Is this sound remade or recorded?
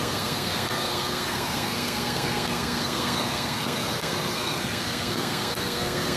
remade